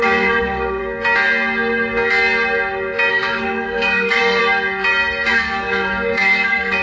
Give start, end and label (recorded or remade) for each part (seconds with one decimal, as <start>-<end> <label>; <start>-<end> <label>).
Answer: 0.0-0.8 remade; 0.8-3.1 recorded; 3.1-4.4 remade; 4.4-5.3 recorded; 5.3-6.8 remade